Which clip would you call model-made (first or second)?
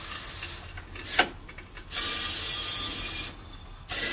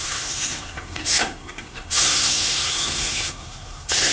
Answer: second